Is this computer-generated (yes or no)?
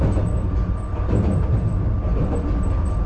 no